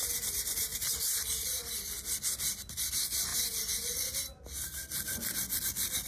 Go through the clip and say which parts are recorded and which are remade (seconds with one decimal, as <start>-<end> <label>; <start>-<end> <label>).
0.0-6.1 recorded